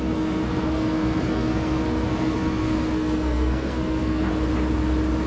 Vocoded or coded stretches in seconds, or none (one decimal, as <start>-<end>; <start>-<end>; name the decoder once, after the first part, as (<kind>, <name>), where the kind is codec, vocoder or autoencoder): 0.0-4.3 (codec, SNAC)